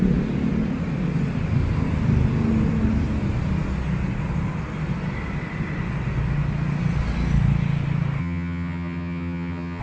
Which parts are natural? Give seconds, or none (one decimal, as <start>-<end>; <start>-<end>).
0.0-8.2